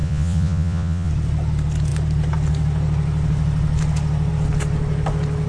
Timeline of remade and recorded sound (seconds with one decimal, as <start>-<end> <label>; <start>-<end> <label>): 0.0-1.1 remade; 1.1-5.5 recorded